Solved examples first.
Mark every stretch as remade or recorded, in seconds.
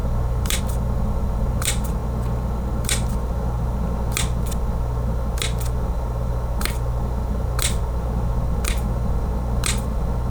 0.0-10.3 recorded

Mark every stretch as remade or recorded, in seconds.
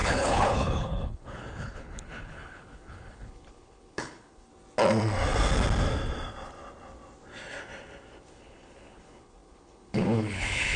0.0-4.5 remade; 4.5-8.3 recorded; 8.3-10.8 remade